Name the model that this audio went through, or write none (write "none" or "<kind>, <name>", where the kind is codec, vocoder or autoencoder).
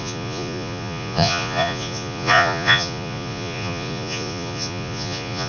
vocoder, Vocos